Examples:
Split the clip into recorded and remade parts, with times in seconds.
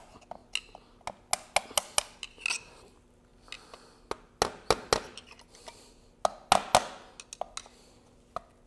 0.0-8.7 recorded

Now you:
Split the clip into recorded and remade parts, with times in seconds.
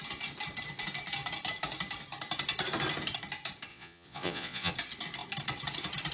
0.0-3.7 recorded; 3.7-4.7 remade; 4.7-6.1 recorded